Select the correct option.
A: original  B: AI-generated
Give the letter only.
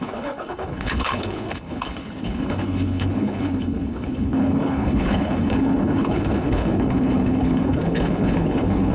B